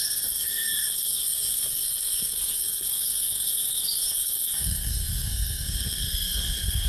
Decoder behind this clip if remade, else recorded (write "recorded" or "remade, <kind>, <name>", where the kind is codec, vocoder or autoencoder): remade, codec, SNAC